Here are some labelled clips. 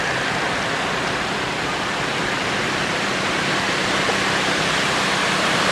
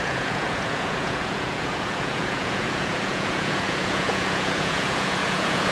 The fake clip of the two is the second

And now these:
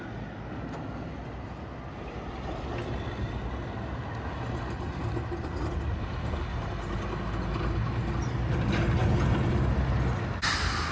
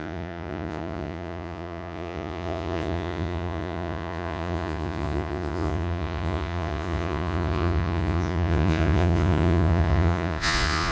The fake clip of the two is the second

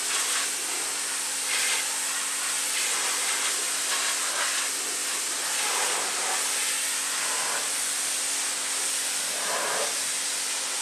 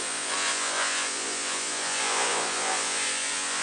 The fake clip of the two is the second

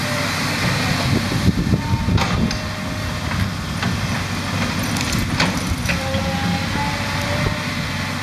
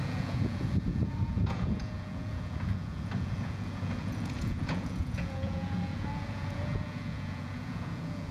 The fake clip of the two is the second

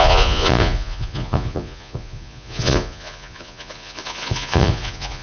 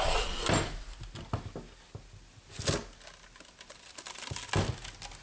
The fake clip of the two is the first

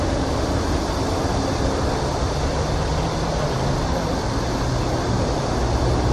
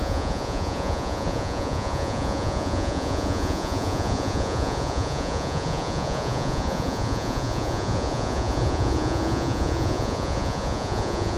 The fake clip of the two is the second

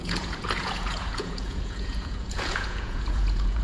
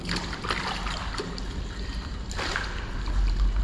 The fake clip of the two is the first